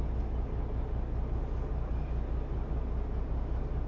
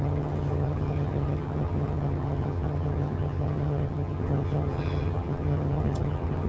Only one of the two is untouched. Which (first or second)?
first